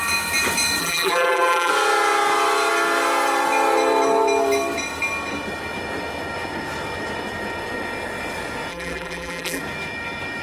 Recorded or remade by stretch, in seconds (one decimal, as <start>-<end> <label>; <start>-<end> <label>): 0.0-0.8 recorded; 0.8-1.7 remade; 1.7-8.7 recorded; 8.7-9.6 remade; 9.6-10.4 recorded